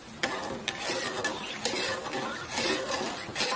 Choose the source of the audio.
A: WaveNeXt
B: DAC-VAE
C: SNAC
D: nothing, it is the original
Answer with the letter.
D